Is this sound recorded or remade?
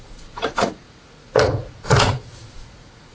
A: remade